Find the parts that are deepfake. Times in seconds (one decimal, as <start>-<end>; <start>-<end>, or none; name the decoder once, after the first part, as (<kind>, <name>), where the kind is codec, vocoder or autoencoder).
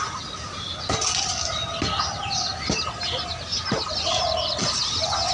none